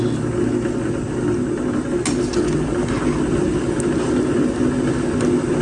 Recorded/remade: recorded